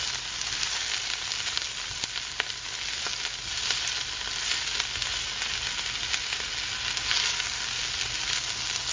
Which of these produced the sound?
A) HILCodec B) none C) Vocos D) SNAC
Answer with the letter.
B